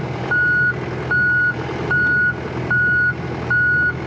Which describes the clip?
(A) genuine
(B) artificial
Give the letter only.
A